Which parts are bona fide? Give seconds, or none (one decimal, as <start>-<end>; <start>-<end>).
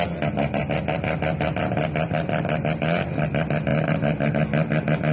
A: 0.0-5.1